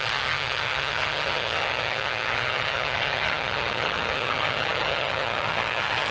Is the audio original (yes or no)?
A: no